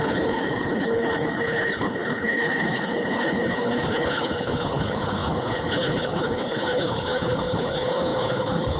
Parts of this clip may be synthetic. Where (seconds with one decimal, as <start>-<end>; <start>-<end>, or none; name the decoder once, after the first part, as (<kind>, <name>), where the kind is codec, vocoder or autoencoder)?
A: 0.0-8.8 (codec, HILCodec)